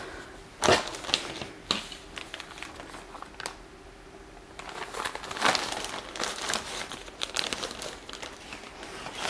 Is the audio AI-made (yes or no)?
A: no